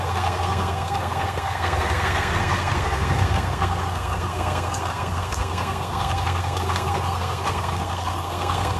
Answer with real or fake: fake